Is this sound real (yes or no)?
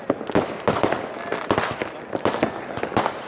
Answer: yes